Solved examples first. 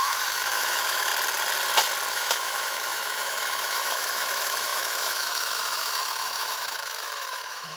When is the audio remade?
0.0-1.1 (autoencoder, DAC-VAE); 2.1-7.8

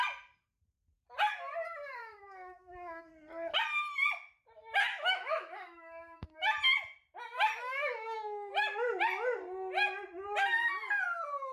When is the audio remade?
2.0-3.1 (autoencoder, DAC-VAE); 4.9-6.4; 7.6-8.5

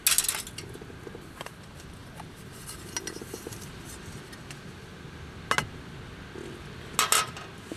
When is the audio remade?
none

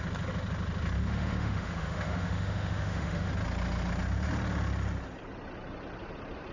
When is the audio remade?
1.0-3.3 (autoencoder, DAC-VAE)

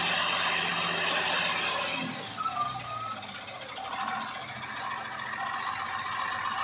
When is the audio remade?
none

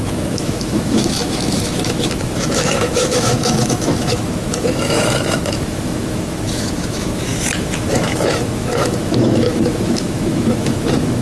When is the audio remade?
0.0-11.2 (autoencoder, DAC-VAE)